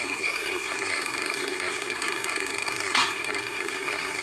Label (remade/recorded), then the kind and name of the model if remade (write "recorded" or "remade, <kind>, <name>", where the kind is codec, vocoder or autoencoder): remade, codec, SNAC